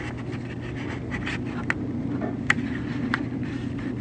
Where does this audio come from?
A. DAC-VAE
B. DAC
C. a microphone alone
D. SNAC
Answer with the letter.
C